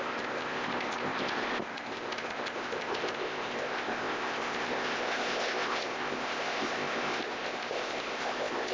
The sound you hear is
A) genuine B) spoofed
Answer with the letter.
B